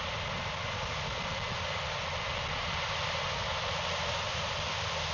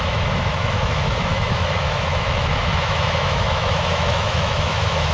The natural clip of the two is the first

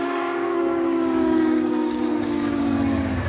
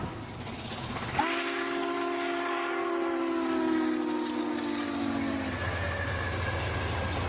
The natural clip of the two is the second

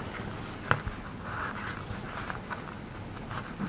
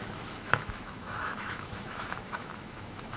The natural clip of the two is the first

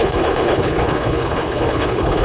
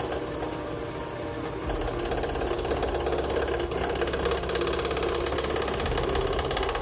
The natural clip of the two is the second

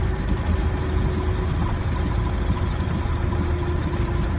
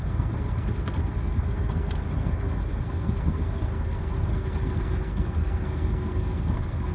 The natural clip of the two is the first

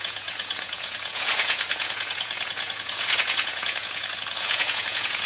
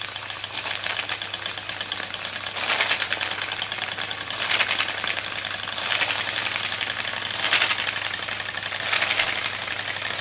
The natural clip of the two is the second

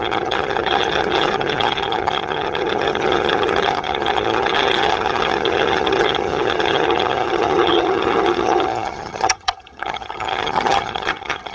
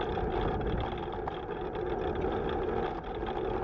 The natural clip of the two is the second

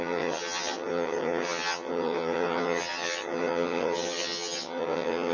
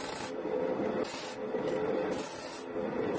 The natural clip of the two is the second